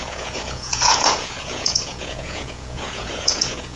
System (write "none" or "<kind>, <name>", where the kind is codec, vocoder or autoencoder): vocoder, Vocos